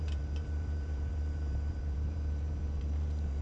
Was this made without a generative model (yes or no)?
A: no